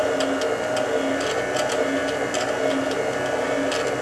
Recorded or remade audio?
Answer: recorded